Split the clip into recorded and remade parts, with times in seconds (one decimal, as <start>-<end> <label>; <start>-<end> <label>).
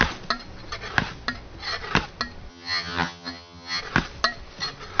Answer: 0.0-2.5 recorded; 2.5-3.8 remade; 3.8-5.0 recorded